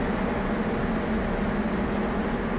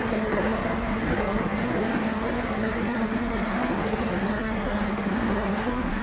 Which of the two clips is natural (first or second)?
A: first